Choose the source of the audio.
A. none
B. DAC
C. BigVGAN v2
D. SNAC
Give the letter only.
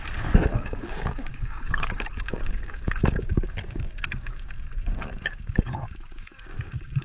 B